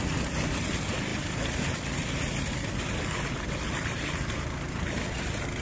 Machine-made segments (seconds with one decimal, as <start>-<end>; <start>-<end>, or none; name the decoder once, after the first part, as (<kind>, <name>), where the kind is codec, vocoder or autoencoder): 1.1-4.5 (vocoder, BigVGAN v2)